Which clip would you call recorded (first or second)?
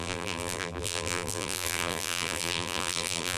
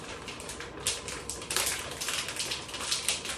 second